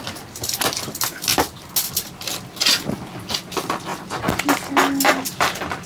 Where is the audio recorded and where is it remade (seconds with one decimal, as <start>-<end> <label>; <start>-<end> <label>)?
0.0-5.9 recorded

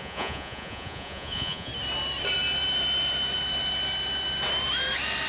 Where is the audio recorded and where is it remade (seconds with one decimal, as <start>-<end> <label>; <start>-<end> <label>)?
0.0-1.7 remade; 1.7-5.3 recorded

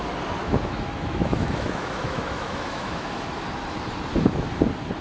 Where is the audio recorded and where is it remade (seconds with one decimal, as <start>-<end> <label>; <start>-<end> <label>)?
0.0-0.4 recorded; 0.4-3.4 remade; 3.4-5.0 recorded

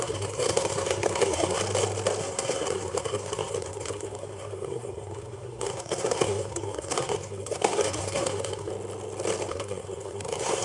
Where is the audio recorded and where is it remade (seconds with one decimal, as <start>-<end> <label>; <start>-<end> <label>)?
0.0-1.6 remade; 1.6-2.2 recorded; 2.2-8.7 remade; 8.7-9.5 recorded; 9.5-10.6 remade

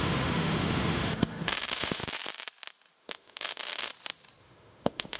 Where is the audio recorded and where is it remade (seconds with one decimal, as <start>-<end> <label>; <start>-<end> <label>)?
0.0-2.0 remade; 2.0-3.0 recorded; 3.0-3.9 remade; 3.9-4.4 recorded; 4.4-5.2 remade